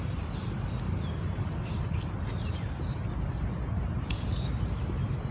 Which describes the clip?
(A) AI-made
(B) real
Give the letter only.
A